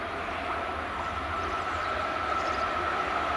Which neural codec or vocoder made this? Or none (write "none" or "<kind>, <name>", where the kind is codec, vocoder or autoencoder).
none